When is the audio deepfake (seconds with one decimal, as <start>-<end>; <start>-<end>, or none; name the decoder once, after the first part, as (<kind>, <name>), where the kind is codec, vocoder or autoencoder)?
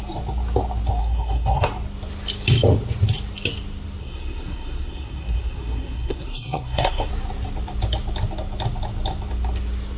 1.0-1.7 (codec, SNAC); 4.0-7.1